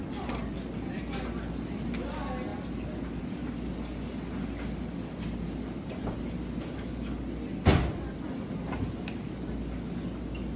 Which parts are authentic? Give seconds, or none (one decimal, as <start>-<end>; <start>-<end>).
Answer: 0.0-10.6